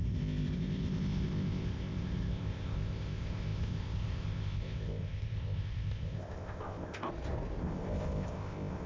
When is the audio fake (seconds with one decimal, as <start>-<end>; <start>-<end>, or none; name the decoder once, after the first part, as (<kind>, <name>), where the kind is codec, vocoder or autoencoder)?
0.0-7.1 (codec, ZipCodec); 7.6-8.9